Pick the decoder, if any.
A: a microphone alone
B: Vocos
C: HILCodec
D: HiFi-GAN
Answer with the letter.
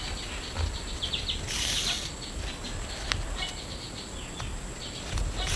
A